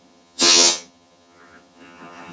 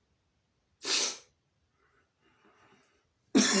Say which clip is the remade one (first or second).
first